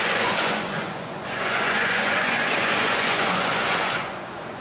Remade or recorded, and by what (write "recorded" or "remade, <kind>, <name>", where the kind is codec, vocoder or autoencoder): remade, vocoder, Vocos